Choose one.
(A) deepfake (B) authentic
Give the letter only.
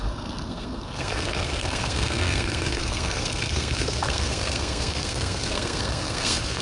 A